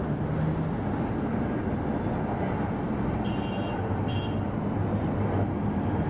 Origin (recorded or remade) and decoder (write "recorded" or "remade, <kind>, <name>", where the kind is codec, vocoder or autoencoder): recorded